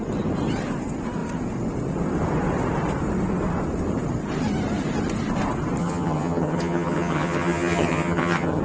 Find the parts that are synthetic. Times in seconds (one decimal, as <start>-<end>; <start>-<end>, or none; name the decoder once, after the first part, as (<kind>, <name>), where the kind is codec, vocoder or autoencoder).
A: 5.8-8.6 (vocoder, HiFi-GAN)